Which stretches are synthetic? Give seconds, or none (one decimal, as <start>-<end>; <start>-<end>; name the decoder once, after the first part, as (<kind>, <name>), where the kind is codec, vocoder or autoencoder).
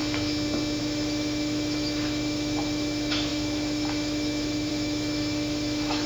0.8-6.1 (autoencoder, DAC-VAE)